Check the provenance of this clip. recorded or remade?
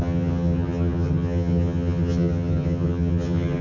remade